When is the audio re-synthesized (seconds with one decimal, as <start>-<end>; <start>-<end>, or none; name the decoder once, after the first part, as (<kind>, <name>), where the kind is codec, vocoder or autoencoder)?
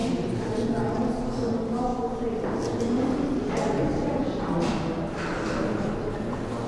none